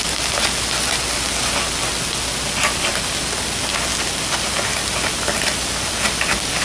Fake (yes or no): no